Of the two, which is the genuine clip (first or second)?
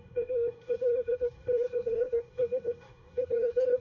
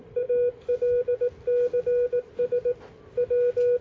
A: second